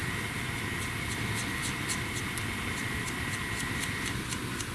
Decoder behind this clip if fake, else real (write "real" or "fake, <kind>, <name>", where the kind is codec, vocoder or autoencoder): real